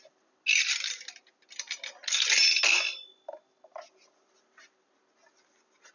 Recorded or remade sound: recorded